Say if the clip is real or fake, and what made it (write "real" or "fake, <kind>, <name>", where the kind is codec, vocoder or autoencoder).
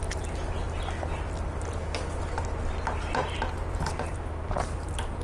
real